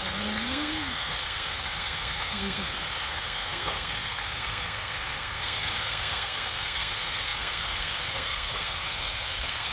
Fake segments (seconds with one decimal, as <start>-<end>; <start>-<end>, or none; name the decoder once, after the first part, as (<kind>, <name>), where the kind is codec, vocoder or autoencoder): 0.0-9.7 (codec, SNAC)